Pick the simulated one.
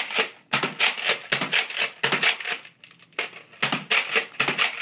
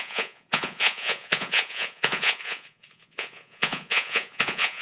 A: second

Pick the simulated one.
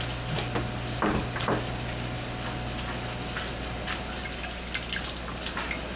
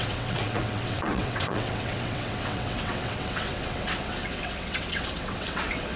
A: second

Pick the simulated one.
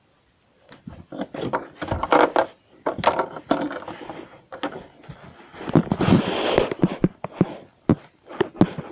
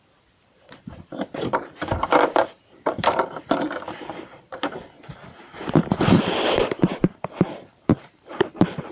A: second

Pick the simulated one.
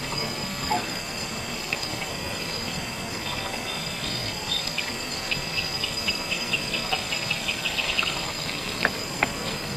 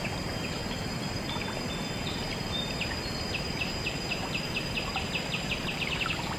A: first